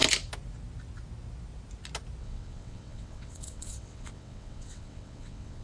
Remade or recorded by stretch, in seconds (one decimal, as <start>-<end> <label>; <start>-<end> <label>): 0.0-2.2 recorded; 2.2-5.6 remade